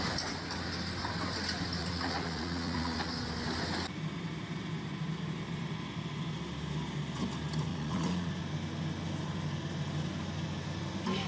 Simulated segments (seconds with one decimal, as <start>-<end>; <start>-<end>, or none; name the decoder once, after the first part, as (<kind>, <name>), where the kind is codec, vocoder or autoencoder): 1.8-3.1 (vocoder, Vocos); 7.7-8.3